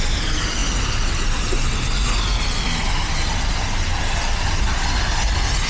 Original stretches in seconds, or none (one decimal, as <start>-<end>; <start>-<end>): 0.0-5.7